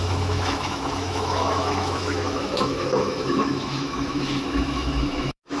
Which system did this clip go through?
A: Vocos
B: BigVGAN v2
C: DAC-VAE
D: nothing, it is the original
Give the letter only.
C